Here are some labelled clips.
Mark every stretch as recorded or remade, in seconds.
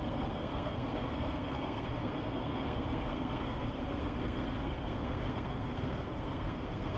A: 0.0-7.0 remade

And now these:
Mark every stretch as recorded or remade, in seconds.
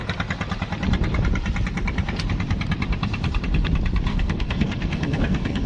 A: 0.0-4.1 recorded; 4.1-5.7 remade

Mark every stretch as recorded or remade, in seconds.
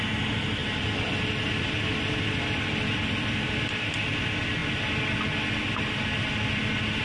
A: 0.0-7.0 recorded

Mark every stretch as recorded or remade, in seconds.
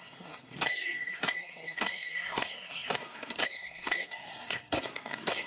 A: 0.0-5.5 remade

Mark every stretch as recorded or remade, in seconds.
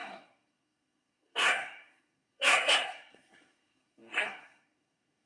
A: 0.0-5.3 remade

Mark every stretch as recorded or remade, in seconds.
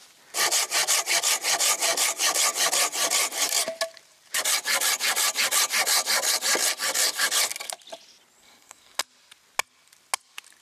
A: 0.0-8.4 recorded; 8.4-9.0 remade; 9.0-10.6 recorded